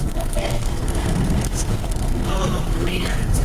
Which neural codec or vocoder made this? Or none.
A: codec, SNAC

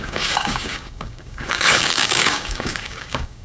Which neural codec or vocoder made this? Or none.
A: codec, DAC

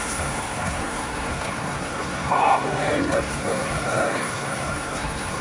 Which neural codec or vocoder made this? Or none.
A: codec, SNAC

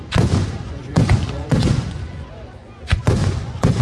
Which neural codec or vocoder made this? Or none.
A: vocoder, Vocos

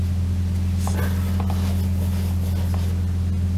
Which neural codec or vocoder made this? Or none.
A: none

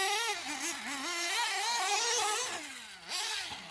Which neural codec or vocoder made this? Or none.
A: none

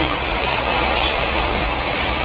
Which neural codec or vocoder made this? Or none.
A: vocoder, Vocos